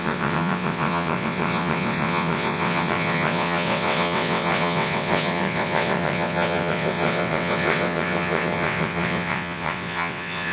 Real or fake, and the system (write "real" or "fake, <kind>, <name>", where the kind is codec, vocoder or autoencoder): fake, vocoder, WaveNeXt